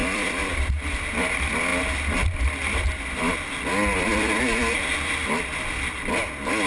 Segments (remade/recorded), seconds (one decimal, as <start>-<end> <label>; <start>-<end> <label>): 0.0-0.9 remade; 0.9-3.9 recorded; 3.9-4.4 remade; 4.4-6.7 recorded